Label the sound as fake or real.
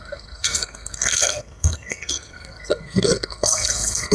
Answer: fake